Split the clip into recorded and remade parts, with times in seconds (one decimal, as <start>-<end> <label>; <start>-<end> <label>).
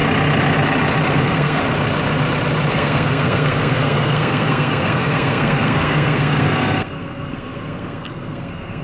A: 0.0-1.1 recorded; 1.1-1.6 remade; 1.6-2.7 recorded; 2.7-8.8 remade